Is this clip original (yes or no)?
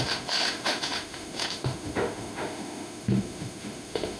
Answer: no